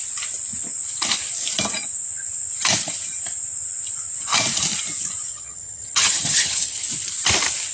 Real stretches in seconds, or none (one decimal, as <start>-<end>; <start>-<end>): 0.0-5.3; 6.9-7.7